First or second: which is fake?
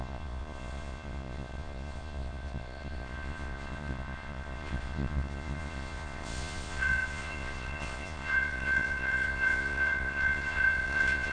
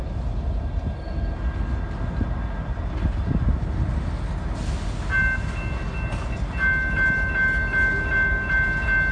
first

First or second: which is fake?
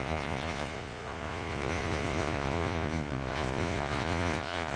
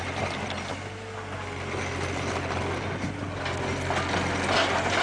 first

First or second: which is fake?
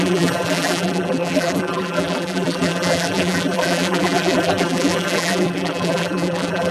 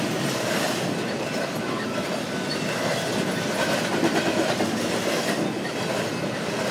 first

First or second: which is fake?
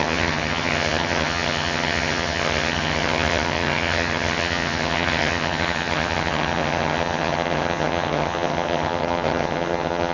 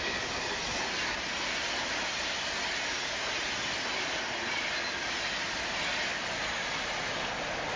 first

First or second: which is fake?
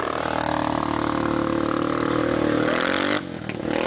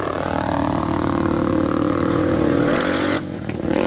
second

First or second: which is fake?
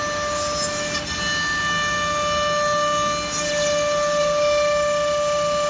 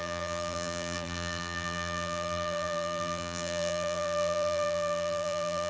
second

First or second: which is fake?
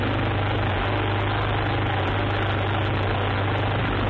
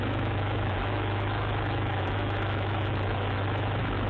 second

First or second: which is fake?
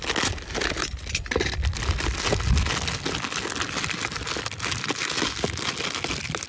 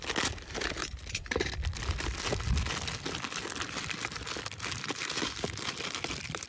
second